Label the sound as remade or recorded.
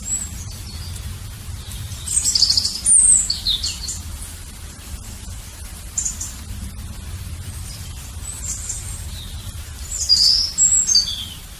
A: recorded